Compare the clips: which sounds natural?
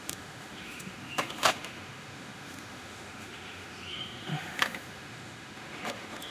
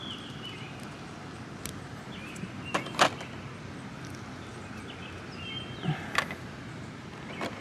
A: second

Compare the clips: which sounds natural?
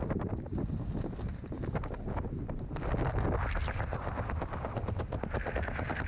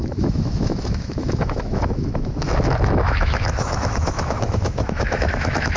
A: first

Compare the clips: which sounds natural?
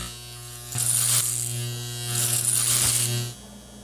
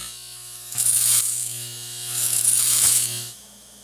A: first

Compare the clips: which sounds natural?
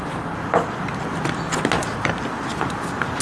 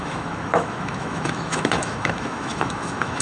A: first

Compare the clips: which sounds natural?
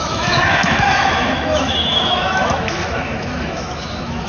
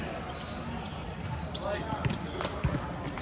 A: second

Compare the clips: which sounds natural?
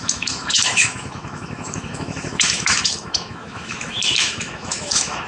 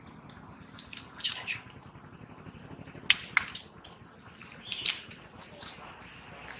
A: second